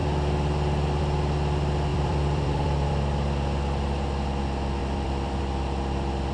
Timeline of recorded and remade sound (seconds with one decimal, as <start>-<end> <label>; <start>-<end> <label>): 0.0-1.9 recorded; 1.9-2.9 remade; 2.9-4.8 recorded; 4.8-5.4 remade; 5.4-6.3 recorded